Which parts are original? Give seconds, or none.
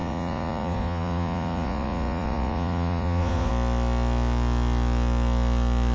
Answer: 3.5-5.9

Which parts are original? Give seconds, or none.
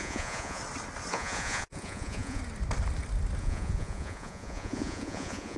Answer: 0.6-1.1; 2.4-3.4